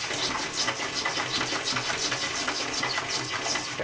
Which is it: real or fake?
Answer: real